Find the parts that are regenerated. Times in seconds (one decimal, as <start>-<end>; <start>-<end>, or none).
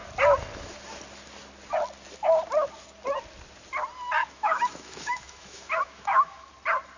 4.2-6.5